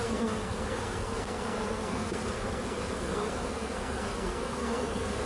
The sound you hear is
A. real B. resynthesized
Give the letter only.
B